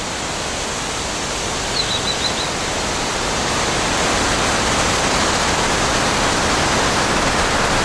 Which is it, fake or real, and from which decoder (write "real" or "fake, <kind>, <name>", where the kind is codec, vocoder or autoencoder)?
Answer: real